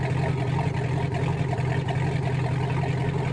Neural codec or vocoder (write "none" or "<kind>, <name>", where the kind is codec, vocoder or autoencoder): none